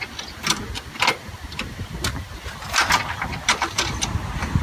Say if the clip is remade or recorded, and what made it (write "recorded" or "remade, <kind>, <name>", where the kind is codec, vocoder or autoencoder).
recorded